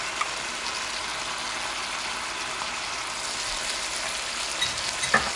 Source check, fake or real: real